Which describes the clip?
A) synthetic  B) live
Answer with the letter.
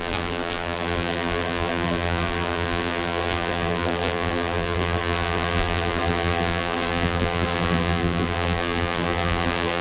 A